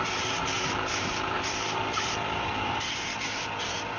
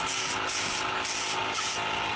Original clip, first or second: second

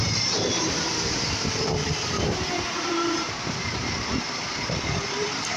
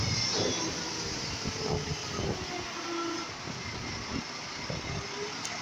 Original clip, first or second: second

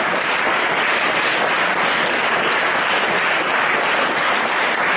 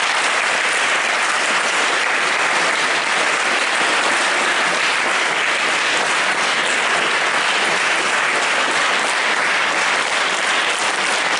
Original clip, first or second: first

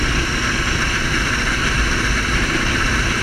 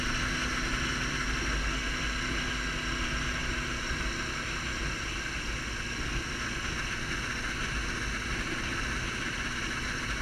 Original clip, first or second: second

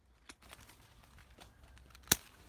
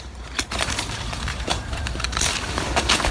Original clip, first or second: first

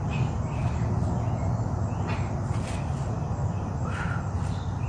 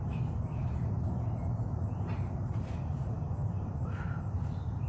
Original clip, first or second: first